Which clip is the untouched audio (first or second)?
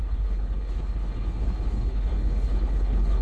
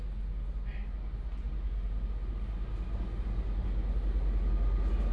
second